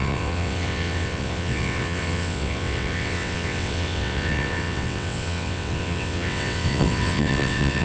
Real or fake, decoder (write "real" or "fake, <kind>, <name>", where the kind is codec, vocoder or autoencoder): fake, vocoder, WaveNeXt